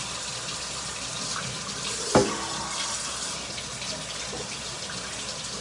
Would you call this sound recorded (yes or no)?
yes